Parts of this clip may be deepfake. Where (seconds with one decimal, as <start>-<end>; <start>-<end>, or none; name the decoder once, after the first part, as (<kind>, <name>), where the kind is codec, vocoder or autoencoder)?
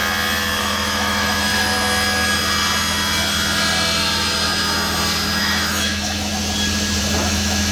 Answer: 0.6-1.5 (autoencoder, DAC-VAE); 5.4-6.3; 7.0-7.7